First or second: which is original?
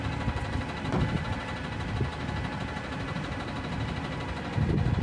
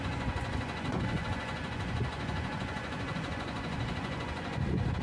first